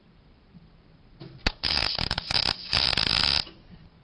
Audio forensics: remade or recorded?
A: recorded